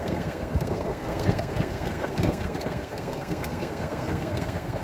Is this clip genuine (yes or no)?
no